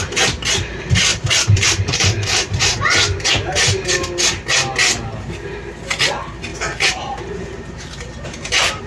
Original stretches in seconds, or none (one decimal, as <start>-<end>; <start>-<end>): 0.0-1.1; 2.8-3.5; 4.2-6.5

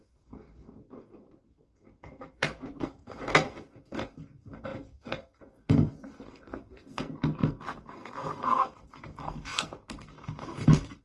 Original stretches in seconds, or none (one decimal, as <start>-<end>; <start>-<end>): none

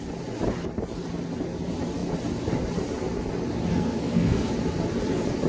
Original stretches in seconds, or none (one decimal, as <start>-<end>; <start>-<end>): 0.0-3.7; 4.5-5.5

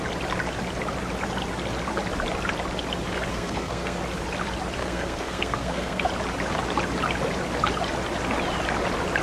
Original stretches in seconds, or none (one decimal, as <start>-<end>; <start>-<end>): 0.0-3.3; 4.0-4.8; 6.1-9.2

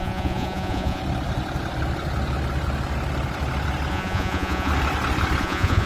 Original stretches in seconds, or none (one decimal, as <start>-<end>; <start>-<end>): 1.0-3.9; 4.7-5.4